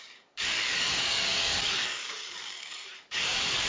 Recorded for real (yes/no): no